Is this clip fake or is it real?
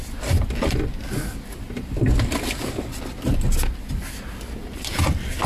real